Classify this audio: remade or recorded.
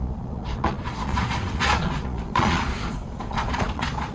remade